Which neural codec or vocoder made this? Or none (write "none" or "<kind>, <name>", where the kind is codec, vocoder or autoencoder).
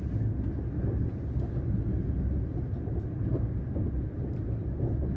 none